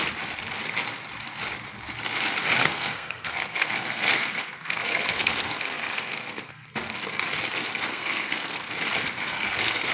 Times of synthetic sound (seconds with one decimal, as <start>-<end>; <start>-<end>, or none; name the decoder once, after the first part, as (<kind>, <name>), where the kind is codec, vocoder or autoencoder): 2.6-6.7 (codec, SNAC); 7.9-8.7; 9.3-9.9